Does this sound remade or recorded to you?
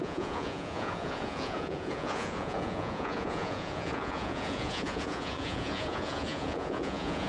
remade